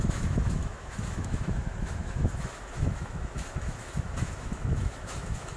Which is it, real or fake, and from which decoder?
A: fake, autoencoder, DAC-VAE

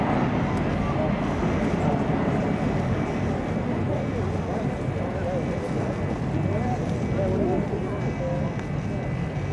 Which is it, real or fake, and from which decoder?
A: real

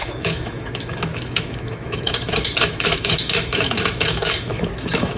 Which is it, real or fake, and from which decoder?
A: fake, autoencoder, DAC-VAE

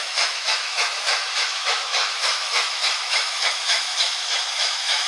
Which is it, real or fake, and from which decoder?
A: fake, autoencoder, DAC-VAE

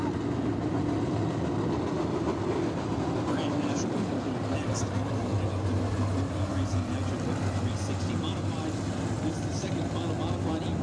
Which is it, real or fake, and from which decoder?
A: real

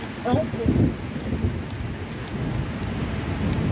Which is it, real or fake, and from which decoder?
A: real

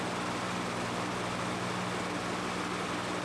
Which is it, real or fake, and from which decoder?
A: real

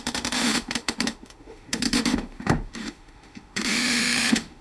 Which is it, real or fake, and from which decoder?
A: fake, autoencoder, DAC-VAE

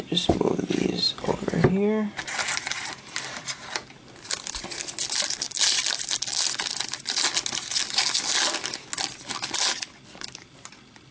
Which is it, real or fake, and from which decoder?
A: real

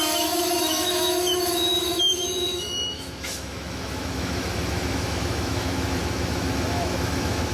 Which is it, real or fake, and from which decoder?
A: fake, autoencoder, DAC-VAE